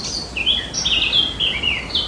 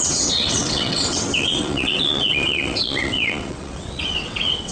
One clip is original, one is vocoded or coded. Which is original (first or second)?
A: first